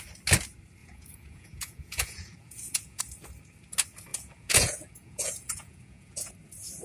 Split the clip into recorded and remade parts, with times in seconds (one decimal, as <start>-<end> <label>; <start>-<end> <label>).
0.0-0.8 recorded; 0.8-3.0 remade; 3.0-4.1 recorded; 4.1-6.3 remade; 6.3-6.8 recorded